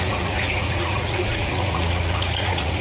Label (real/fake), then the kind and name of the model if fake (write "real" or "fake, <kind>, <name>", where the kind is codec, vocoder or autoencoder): fake, vocoder, Vocos